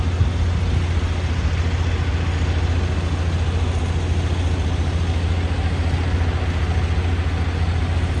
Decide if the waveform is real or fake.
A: real